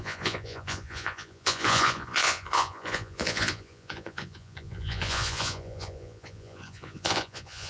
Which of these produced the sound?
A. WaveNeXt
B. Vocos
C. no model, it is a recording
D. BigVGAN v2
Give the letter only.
B